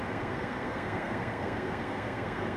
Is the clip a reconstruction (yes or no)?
yes